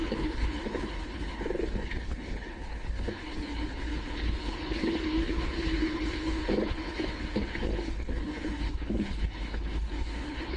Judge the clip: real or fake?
fake